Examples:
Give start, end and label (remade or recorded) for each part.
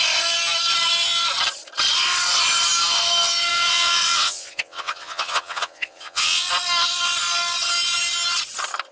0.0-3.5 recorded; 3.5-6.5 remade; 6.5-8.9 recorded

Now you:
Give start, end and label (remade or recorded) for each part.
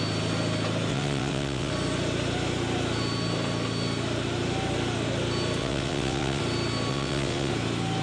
0.0-0.9 recorded; 0.9-1.7 remade; 1.7-5.6 recorded; 5.6-6.4 remade; 6.4-6.9 recorded; 6.9-7.5 remade; 7.5-8.0 recorded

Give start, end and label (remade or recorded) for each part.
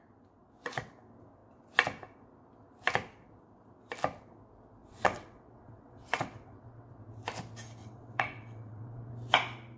0.0-0.4 recorded; 0.4-0.9 remade; 0.9-4.8 recorded; 4.8-7.0 remade; 7.0-7.8 recorded; 7.8-9.1 remade; 9.1-9.8 recorded